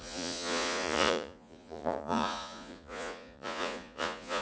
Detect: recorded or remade remade